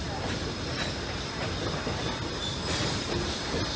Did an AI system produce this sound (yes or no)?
no